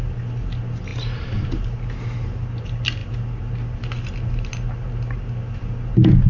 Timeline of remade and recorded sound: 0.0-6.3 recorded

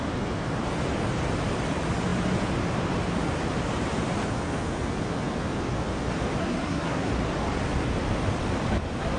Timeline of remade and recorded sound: 0.0-6.4 recorded; 6.4-7.1 remade; 7.1-9.2 recorded

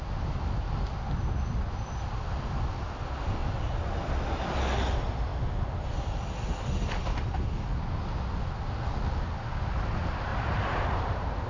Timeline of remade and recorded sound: 0.0-3.4 recorded; 3.4-4.0 remade; 4.0-10.3 recorded; 10.3-11.5 remade

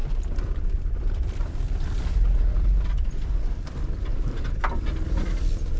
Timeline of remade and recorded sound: 0.0-3.5 remade; 3.5-4.1 recorded; 4.1-5.8 remade

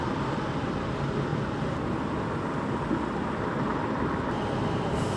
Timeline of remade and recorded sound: 0.0-1.3 remade; 1.3-4.4 recorded; 4.4-5.2 remade

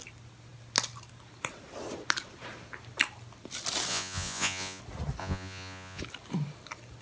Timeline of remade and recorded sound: 0.0-3.9 recorded; 3.9-4.8 remade; 4.8-5.2 recorded; 5.2-6.0 remade; 6.0-7.0 recorded

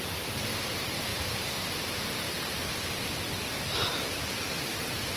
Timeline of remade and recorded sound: 0.0-1.1 recorded; 1.1-4.2 remade; 4.2-5.2 recorded

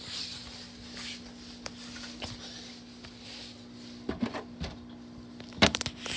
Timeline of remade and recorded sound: 0.0-6.2 recorded